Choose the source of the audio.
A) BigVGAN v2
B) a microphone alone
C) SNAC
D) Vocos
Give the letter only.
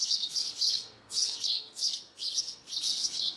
C